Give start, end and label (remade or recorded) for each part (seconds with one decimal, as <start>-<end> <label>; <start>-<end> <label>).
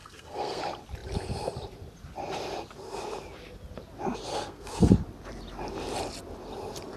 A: 0.0-0.6 remade; 0.6-4.3 recorded; 4.3-4.9 remade; 4.9-7.0 recorded